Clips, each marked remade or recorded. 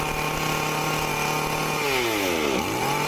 recorded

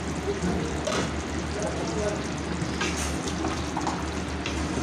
recorded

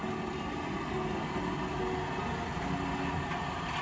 recorded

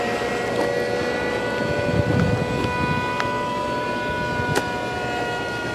recorded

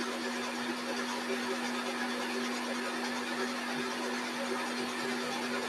recorded